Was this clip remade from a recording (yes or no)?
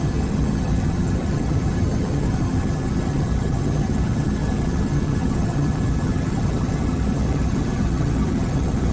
yes